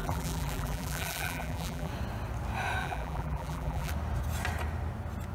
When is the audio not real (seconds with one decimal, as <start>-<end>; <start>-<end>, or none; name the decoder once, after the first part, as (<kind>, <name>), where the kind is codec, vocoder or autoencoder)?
0.0-1.9 (vocoder, BigVGAN v2); 2.8-3.9